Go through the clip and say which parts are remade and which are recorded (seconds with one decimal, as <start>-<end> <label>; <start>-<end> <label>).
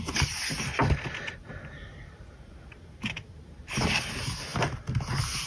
0.0-5.5 recorded